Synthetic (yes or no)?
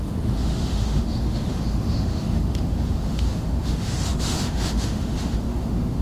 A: yes